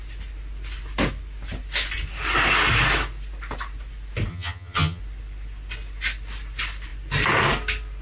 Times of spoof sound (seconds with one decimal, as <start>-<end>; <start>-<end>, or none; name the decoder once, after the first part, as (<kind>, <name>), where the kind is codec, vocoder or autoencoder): 4.3-5.0 (vocoder, HiFi-GAN)